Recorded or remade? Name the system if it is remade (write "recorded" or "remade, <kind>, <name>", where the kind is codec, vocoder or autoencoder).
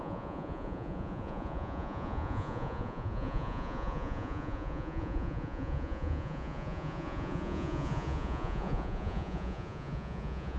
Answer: remade, vocoder, Vocos